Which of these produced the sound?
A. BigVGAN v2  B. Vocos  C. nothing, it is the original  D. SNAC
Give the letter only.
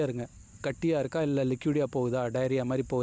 C